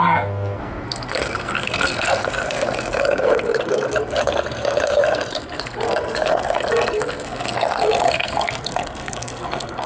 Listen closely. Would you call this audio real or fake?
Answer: fake